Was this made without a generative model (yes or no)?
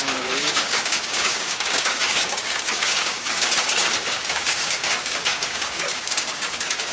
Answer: no